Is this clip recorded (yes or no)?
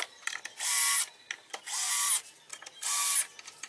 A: yes